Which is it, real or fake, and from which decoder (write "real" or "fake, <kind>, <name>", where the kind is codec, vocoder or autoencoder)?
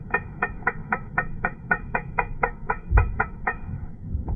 fake, autoencoder, DAC-VAE